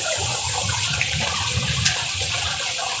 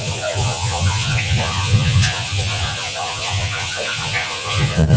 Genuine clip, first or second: first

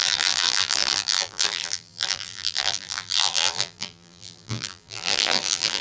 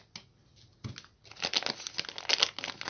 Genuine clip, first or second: second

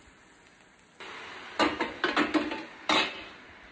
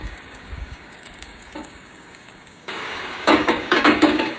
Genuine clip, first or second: first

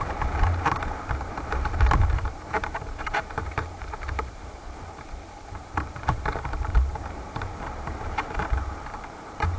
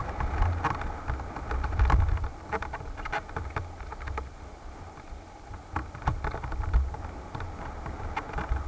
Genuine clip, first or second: second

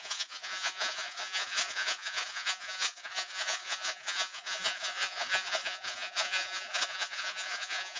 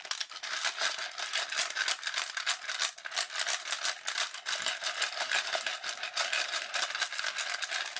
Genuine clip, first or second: second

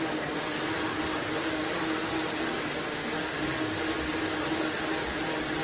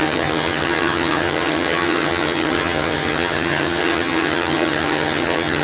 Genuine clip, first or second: first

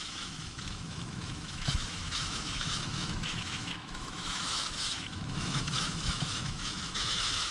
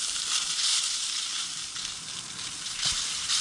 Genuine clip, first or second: second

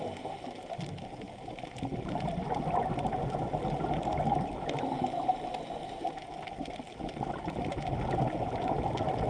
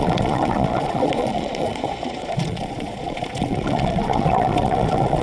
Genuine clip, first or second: first